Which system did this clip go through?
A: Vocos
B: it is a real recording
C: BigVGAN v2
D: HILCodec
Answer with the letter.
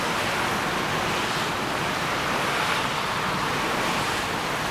C